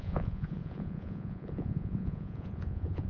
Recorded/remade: remade